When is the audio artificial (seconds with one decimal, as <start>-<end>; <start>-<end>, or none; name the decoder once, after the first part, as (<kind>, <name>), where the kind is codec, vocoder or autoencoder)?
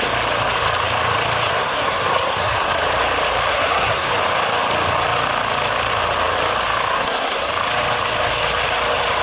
1.5-2.8 (codec, SNAC); 3.5-4.1; 6.9-7.5